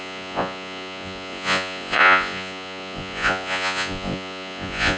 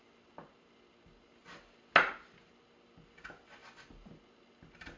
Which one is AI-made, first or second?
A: first